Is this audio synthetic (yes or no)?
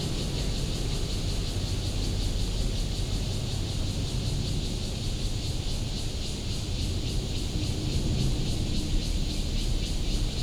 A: no